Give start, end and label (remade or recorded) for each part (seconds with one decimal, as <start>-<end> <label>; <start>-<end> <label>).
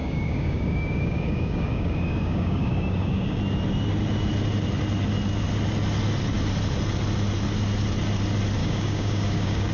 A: 0.0-3.4 remade; 3.4-8.6 recorded; 8.6-9.7 remade